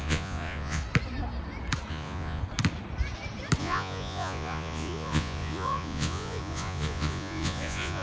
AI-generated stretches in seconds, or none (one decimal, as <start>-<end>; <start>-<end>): 0.0-0.8; 1.9-2.4; 3.6-8.0